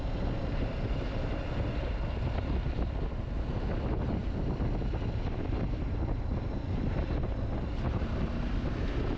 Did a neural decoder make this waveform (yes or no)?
no